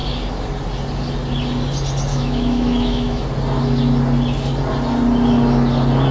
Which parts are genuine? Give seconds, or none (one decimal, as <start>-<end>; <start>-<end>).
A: 0.0-2.1; 3.2-6.1